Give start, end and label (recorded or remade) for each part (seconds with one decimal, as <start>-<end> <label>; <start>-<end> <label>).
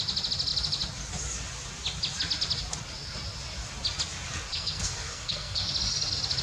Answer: 0.0-4.5 recorded; 4.5-5.7 remade; 5.7-6.4 recorded